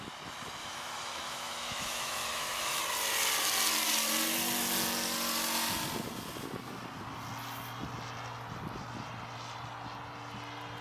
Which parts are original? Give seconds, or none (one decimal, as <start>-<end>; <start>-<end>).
0.0-0.6; 2.8-10.8